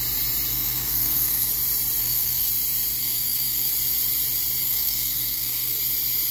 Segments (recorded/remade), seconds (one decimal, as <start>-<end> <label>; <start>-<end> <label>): 0.0-0.5 recorded; 0.5-1.5 remade; 1.5-2.0 recorded; 2.0-2.5 remade; 2.5-3.0 recorded; 3.0-3.7 remade; 3.7-4.6 recorded; 4.6-5.8 remade; 5.8-6.3 recorded